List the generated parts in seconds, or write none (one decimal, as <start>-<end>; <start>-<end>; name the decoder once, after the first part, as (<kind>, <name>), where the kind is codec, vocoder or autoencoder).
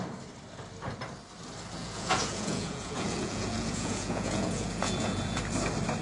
1.8-5.4 (vocoder, Vocos)